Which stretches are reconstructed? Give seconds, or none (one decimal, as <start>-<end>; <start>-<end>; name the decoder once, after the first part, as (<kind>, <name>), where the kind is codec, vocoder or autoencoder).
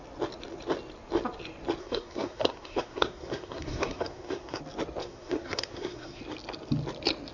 1.8-4.6 (codec, SNAC); 5.0-6.2